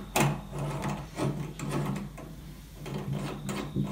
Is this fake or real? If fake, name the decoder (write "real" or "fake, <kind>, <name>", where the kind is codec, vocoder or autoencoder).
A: real